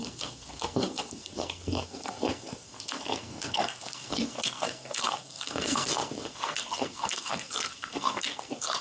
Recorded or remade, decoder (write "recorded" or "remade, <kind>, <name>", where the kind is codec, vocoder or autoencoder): remade, codec, SNAC